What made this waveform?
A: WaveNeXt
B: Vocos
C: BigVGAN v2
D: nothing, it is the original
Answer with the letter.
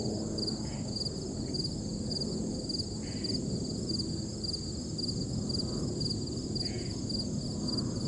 D